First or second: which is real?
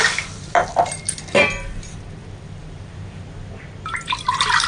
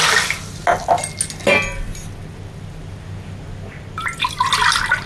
second